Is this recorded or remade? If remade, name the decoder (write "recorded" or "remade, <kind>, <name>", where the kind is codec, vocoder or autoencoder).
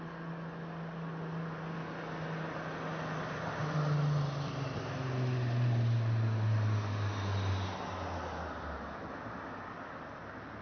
recorded